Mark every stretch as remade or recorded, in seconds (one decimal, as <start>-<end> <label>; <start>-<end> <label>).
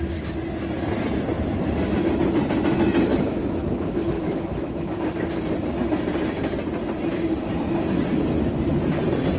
0.0-3.1 recorded; 3.1-4.9 remade; 4.9-9.4 recorded